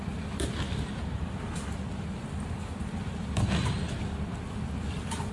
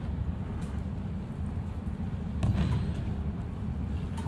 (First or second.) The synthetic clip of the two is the first